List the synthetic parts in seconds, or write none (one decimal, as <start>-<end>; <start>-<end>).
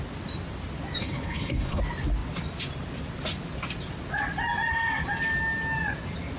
1.0-1.8